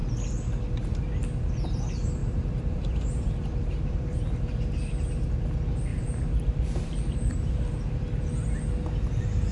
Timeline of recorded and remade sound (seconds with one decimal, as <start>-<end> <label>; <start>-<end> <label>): 0.0-2.2 recorded; 2.2-4.2 remade; 4.2-5.9 recorded; 5.9-7.7 remade; 7.7-9.5 recorded